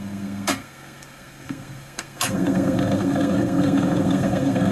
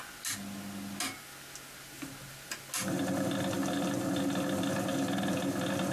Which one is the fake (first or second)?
first